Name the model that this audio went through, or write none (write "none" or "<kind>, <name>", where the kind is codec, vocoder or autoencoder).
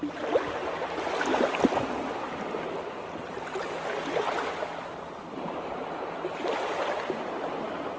none